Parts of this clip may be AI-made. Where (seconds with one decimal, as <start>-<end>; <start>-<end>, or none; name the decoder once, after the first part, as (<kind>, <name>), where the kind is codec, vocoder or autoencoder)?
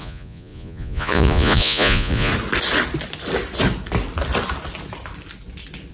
0.0-2.3 (vocoder, Vocos)